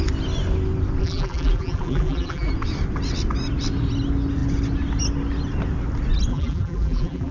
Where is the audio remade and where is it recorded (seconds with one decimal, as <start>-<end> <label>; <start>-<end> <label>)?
0.0-1.0 recorded; 1.0-2.5 remade; 2.5-6.3 recorded; 6.3-7.3 remade